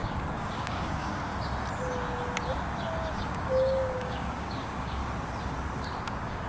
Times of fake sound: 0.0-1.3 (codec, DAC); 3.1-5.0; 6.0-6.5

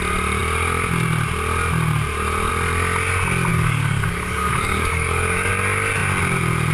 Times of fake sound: 3.5-5.5 (codec, DAC)